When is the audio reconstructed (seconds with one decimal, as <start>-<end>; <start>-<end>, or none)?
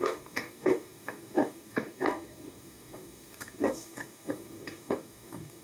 0.0-5.6